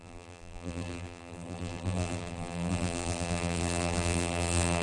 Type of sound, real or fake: fake